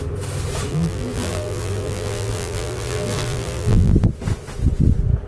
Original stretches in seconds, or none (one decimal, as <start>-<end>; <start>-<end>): 0.0-0.7; 3.9-5.3